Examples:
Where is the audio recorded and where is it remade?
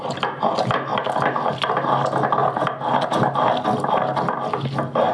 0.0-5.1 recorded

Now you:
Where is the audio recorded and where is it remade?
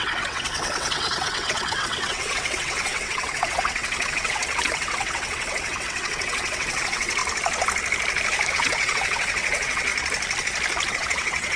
0.0-7.2 remade; 7.2-8.5 recorded; 8.5-9.9 remade; 9.9-10.9 recorded; 10.9-11.6 remade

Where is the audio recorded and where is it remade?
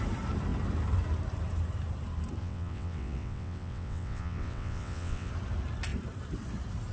0.0-2.4 recorded; 2.4-5.3 remade; 5.3-6.9 recorded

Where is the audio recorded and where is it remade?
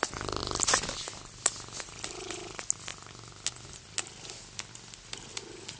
0.0-5.8 recorded